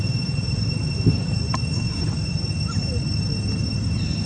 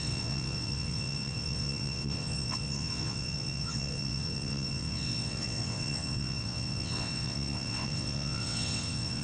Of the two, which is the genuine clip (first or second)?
first